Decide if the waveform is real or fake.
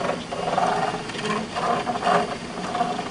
real